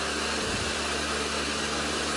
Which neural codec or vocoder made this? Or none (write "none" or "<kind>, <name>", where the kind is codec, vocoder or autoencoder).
none